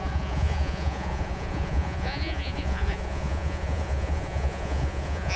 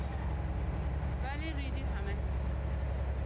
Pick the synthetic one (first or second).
first